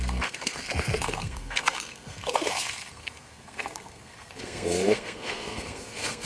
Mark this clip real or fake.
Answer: fake